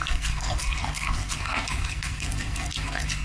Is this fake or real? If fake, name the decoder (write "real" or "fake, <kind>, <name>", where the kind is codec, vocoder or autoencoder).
fake, codec, SNAC